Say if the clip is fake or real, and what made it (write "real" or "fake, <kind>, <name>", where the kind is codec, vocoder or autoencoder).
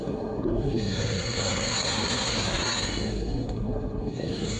fake, codec, SNAC